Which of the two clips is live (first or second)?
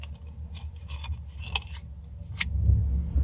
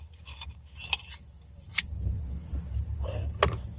first